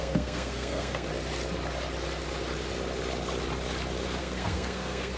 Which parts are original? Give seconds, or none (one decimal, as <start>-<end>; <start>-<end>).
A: 1.1-4.2